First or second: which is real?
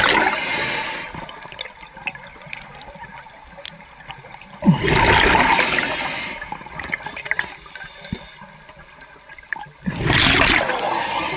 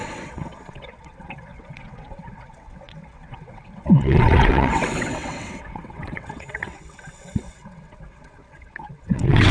first